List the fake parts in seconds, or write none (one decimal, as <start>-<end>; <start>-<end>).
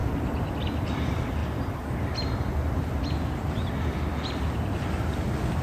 none